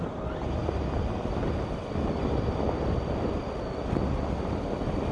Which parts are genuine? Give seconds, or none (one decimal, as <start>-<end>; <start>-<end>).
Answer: 0.0-5.1